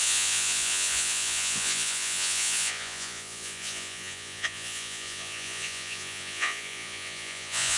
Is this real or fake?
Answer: fake